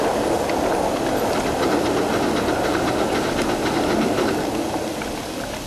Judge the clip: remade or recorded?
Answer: recorded